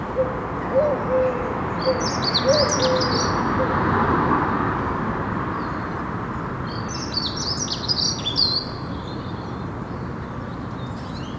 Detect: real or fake real